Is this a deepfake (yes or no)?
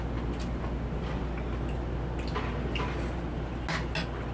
no